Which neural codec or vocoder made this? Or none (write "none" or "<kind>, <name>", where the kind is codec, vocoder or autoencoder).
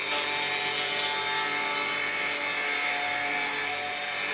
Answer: none